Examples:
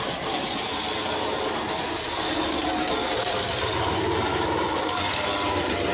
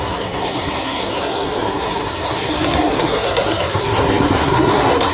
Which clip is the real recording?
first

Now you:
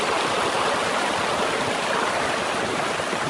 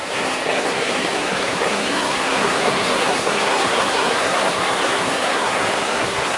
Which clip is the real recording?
first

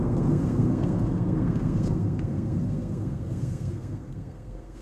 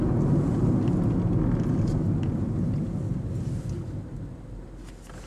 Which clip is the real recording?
second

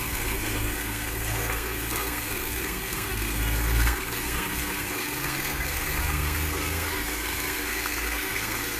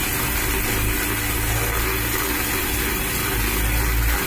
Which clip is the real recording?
second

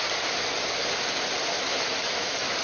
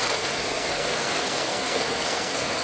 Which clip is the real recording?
first